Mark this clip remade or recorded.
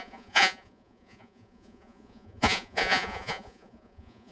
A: remade